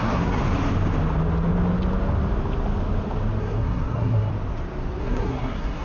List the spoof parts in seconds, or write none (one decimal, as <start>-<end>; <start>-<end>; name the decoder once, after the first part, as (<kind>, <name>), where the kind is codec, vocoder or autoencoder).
0.0-0.4 (codec, SNAC); 3.4-4.3; 5.0-5.8